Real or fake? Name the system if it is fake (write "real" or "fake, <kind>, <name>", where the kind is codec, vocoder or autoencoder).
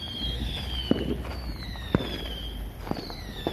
real